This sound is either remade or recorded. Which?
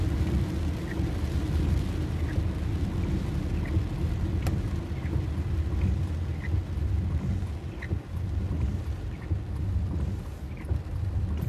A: recorded